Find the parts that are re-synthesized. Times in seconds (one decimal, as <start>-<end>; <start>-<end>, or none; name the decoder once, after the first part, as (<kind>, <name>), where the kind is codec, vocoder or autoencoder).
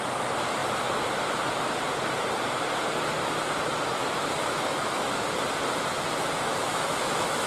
4.0-5.3 (autoencoder, DAC-VAE); 6.5-7.5